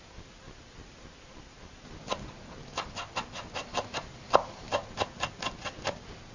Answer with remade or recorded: recorded